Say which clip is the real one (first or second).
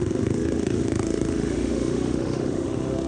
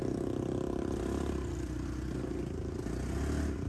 second